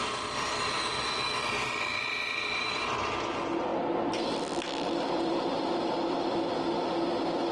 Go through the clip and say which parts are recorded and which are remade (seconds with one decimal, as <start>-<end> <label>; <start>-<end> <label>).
0.0-2.6 recorded; 2.6-3.3 remade; 3.3-3.7 recorded; 3.7-5.7 remade; 5.7-7.5 recorded